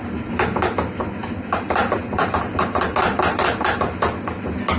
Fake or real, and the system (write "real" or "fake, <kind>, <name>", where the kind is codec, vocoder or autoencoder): real